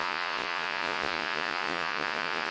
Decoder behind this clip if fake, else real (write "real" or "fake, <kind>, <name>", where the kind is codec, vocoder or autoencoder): fake, vocoder, Vocos